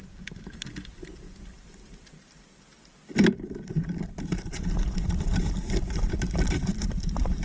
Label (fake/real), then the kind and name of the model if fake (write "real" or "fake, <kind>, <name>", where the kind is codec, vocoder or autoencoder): fake, vocoder, BigVGAN v2